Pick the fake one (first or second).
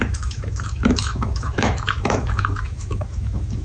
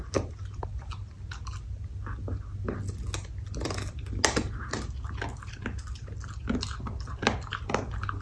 first